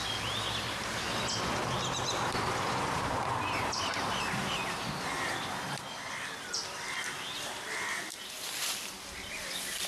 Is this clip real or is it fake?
fake